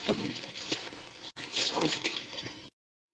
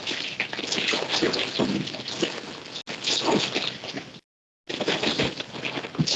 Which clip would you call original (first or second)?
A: second